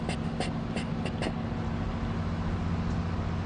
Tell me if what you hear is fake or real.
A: real